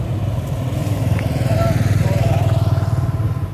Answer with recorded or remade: recorded